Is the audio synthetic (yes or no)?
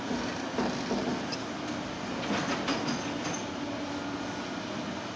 no